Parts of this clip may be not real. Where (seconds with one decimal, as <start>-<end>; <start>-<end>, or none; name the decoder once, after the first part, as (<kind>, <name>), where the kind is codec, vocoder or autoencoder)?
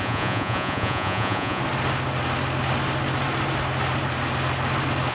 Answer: 0.0-1.6 (vocoder, Vocos)